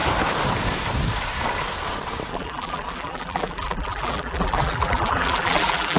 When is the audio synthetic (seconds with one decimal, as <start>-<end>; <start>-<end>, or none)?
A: 2.3-6.0